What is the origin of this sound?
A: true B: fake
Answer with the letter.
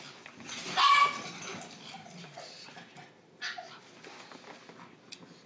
A